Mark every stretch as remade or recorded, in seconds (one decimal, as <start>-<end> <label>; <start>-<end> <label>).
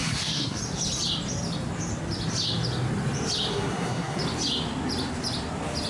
0.0-0.6 remade; 0.6-3.5 recorded; 3.5-4.2 remade; 4.2-5.9 recorded